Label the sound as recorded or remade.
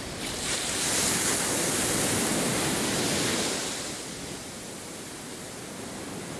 recorded